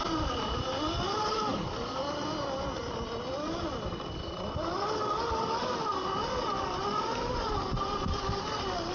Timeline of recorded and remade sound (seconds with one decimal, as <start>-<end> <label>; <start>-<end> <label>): 0.0-8.9 recorded